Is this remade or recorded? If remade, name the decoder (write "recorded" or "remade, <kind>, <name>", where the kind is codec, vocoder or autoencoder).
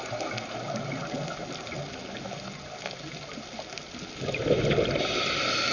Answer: recorded